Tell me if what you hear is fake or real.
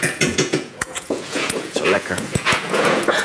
fake